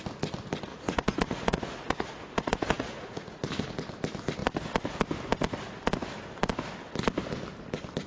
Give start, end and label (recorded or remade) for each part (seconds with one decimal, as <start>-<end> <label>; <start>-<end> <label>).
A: 0.0-0.7 recorded; 0.7-3.5 remade; 3.5-8.1 recorded